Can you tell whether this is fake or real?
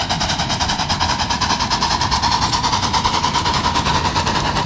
real